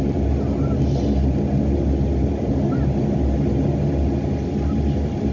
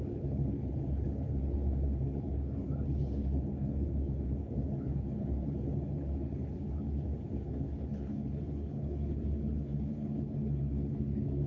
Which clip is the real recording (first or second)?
first